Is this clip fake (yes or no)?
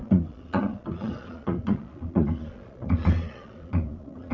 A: yes